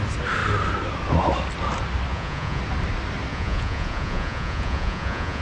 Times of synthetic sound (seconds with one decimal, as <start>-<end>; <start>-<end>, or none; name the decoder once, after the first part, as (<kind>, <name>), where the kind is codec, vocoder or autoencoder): 2.1-2.6 (vocoder, Vocos); 3.3-5.4